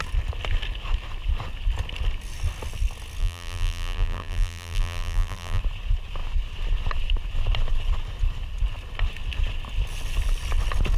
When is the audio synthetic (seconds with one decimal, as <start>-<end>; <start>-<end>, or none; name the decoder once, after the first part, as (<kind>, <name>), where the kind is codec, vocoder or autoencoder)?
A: 3.2-5.6 (vocoder, BigVGAN v2)

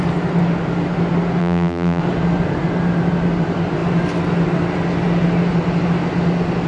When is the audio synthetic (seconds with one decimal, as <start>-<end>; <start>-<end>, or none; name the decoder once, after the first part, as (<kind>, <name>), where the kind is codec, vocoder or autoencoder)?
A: 1.4-2.0 (vocoder, BigVGAN v2)